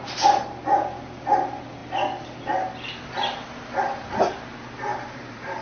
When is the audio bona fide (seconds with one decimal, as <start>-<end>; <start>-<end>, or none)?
0.0-4.9

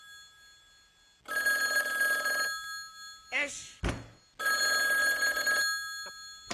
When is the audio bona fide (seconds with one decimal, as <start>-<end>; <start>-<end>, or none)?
0.0-5.0; 5.6-6.5

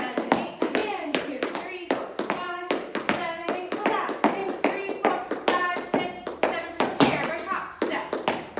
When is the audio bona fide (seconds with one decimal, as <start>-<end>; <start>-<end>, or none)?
0.0-0.8; 1.8-4.4; 7.3-8.6

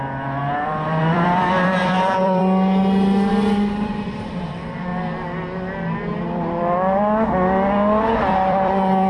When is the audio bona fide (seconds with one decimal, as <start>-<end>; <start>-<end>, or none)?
2.4-3.3; 4.9-8.0